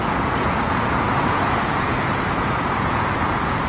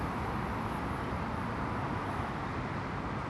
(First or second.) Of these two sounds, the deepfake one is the first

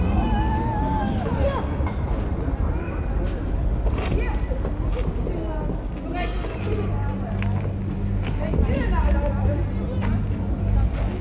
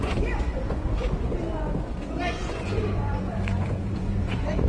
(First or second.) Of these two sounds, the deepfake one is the second